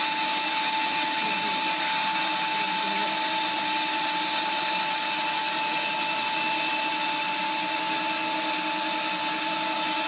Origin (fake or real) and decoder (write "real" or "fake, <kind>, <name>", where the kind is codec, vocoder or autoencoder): real